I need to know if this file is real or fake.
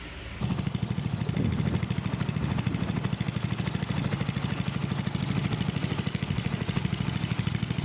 real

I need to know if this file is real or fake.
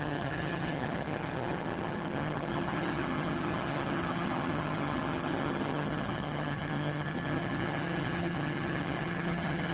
fake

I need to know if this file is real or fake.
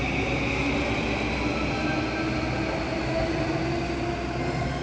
real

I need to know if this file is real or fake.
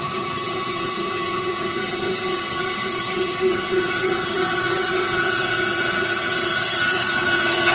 fake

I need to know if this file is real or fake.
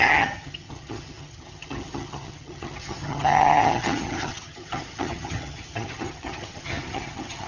fake